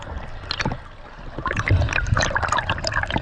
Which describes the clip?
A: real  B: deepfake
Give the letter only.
A